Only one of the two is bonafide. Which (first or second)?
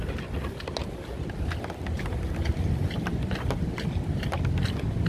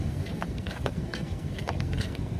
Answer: first